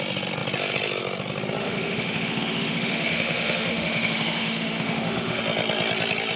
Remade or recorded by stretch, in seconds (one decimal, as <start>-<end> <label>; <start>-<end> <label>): 0.0-1.6 recorded; 1.6-5.4 remade; 5.4-6.4 recorded